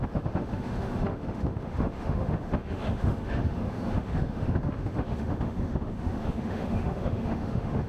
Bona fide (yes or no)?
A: no